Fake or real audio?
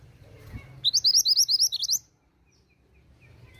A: real